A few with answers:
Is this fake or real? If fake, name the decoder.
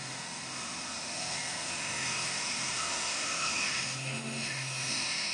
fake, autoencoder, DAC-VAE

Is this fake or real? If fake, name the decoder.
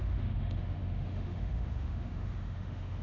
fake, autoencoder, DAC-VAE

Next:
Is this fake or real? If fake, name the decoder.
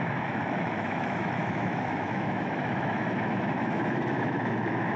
fake, autoencoder, DAC-VAE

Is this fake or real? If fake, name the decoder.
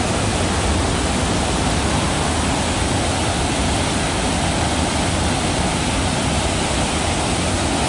real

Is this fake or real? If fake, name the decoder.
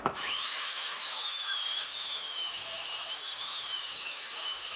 fake, autoencoder, DAC-VAE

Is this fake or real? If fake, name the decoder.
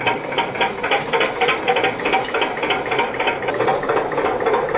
real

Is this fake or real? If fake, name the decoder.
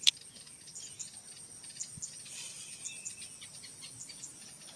real